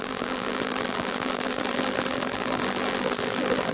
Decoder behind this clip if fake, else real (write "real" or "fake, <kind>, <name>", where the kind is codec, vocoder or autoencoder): fake, vocoder, BigVGAN v2